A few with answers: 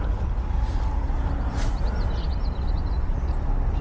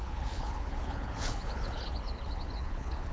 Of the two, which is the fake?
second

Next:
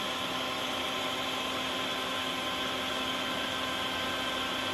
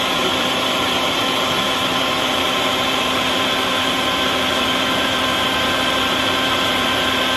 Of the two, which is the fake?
second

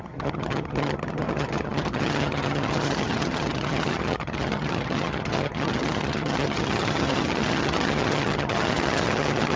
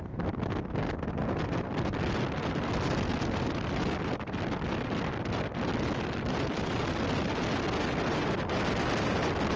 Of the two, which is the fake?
first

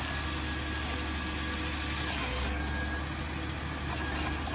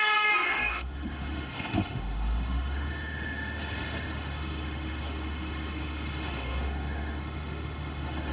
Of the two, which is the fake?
second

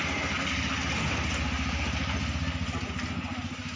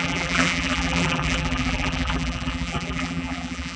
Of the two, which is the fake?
second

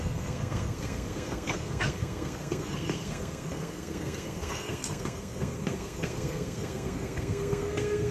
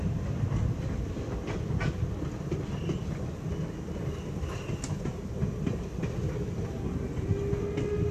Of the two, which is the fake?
first